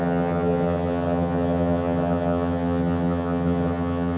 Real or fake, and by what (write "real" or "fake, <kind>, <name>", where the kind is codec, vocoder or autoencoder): fake, vocoder, HiFi-GAN